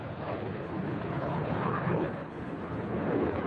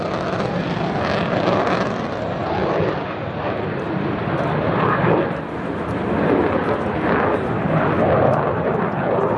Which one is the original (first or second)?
second